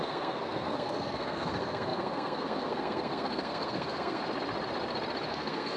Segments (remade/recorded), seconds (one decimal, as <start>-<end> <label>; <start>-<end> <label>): 0.0-4.2 remade; 4.2-5.3 recorded; 5.3-5.8 remade